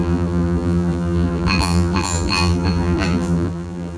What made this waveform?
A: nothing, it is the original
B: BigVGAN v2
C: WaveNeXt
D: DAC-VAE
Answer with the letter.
B